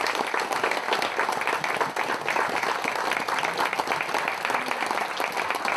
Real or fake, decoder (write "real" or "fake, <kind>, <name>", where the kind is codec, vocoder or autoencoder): real